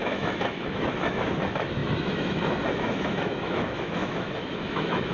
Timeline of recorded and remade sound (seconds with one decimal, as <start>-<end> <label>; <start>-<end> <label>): 0.0-5.1 remade